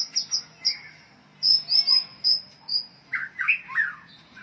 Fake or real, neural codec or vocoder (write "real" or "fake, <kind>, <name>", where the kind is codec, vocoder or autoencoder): real